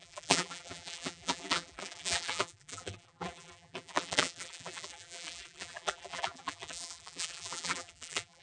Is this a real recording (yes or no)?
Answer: no